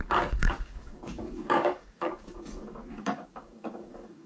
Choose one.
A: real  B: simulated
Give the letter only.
B